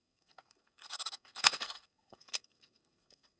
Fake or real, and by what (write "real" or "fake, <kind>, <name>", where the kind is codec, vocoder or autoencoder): fake, codec, SNAC